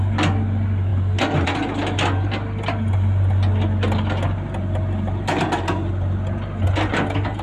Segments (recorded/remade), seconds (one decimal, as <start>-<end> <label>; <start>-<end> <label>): 0.0-7.4 recorded